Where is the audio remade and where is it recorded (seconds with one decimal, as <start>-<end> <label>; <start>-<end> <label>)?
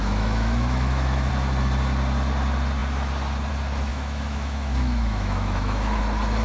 0.0-1.3 remade; 1.3-3.9 recorded; 3.9-6.0 remade; 6.0-6.4 recorded